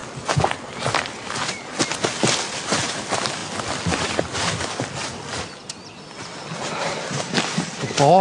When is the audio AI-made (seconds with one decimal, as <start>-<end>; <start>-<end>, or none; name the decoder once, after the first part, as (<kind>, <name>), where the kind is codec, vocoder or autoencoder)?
none